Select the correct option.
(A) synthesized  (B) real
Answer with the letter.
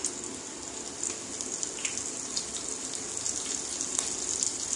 B